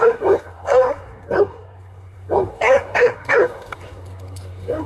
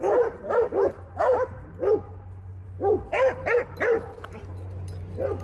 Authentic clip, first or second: second